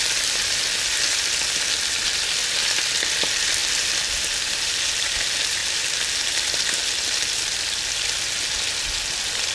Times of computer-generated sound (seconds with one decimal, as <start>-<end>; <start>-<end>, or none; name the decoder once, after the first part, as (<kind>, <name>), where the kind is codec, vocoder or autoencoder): none